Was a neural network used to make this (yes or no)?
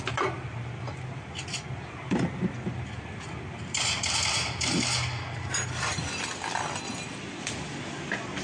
yes